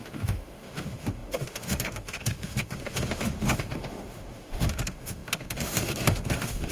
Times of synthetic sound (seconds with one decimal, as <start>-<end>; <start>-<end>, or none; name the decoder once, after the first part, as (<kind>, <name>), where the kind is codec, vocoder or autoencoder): 0.0-6.7 (autoencoder, DAC-VAE)